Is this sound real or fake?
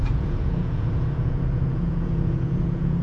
fake